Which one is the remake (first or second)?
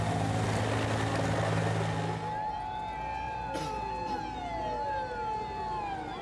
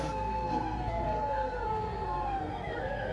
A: second